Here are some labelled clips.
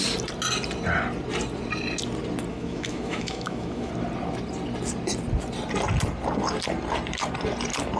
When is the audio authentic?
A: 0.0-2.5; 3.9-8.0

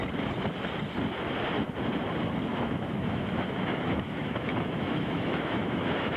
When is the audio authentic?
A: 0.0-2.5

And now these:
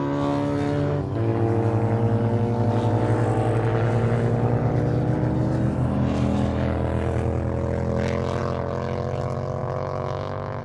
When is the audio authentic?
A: 0.0-9.6

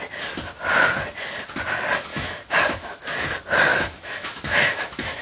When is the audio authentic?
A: 0.0-2.1; 3.0-3.7

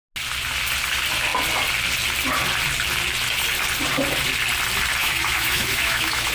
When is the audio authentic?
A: 0.0-5.0